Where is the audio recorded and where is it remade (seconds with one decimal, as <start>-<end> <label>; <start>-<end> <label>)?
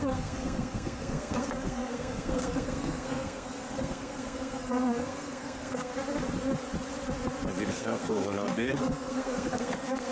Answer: 0.0-5.9 remade; 5.9-7.7 recorded; 7.7-10.1 remade